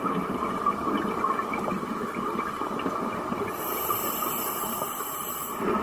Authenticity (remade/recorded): remade